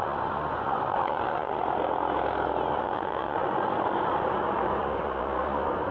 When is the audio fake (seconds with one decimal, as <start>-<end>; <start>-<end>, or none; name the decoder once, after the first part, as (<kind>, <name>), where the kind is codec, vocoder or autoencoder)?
0.0-1.6 (vocoder, Vocos); 2.7-5.9